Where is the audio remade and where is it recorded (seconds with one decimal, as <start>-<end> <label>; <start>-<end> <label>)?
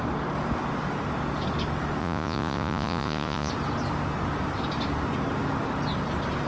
0.0-2.0 recorded; 2.0-3.5 remade; 3.5-6.5 recorded